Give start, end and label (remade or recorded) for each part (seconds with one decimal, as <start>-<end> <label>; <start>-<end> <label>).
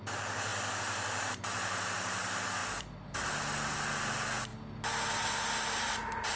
0.0-2.6 remade; 2.6-3.1 recorded; 3.1-4.5 remade; 4.5-5.9 recorded; 5.9-6.4 remade